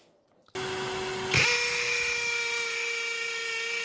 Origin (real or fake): real